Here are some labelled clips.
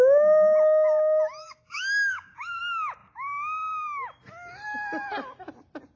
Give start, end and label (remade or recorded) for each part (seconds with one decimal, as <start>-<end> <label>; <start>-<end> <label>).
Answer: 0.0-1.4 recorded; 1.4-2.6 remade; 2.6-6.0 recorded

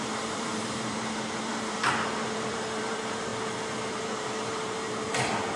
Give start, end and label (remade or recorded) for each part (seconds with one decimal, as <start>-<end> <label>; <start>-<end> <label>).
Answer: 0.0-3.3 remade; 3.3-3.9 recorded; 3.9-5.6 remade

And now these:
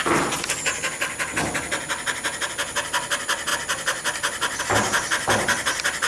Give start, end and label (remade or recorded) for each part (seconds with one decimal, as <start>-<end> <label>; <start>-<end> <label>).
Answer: 0.0-6.1 recorded

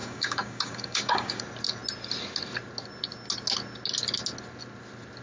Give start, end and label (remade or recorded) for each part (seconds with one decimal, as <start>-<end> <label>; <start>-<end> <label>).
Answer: 0.0-1.4 remade; 1.4-5.2 recorded

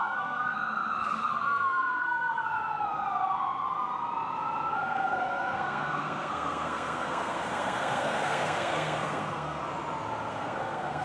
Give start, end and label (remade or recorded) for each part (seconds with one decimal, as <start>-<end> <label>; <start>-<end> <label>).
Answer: 0.0-3.0 remade; 3.0-4.7 recorded; 4.7-9.6 remade; 9.6-10.3 recorded; 10.3-11.0 remade